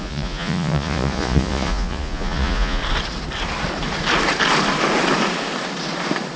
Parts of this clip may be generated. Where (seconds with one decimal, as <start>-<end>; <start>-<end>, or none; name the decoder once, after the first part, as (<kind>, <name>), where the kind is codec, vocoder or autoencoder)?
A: 0.0-2.8 (vocoder, Vocos)